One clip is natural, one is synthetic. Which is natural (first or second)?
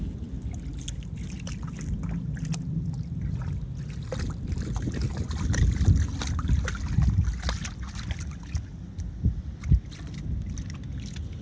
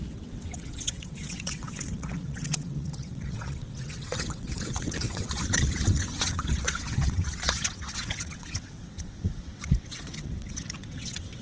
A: first